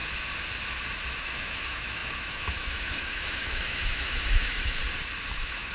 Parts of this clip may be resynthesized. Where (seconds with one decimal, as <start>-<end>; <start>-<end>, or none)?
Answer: 1.2-4.8; 5.3-5.7